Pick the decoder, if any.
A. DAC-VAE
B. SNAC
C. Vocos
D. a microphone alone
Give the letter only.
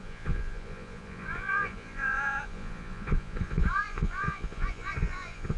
C